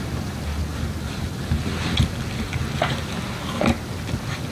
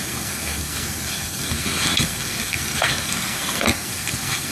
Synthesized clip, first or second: second